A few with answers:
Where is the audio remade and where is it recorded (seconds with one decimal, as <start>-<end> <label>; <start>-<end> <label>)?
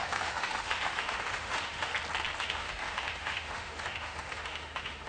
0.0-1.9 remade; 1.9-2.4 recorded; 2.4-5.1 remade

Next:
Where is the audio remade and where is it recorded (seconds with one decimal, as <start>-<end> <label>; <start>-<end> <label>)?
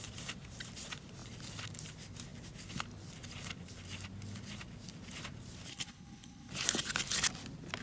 0.0-5.7 recorded; 5.7-6.5 remade; 6.5-7.8 recorded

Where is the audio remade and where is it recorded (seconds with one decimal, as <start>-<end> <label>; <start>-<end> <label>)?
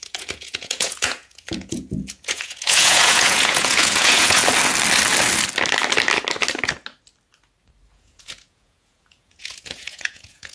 0.0-4.4 remade; 4.4-7.9 recorded; 7.9-10.5 remade